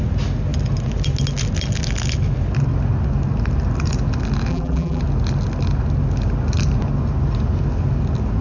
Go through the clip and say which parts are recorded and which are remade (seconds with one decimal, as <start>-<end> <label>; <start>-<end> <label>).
0.0-4.5 recorded; 4.5-5.0 remade; 5.0-8.4 recorded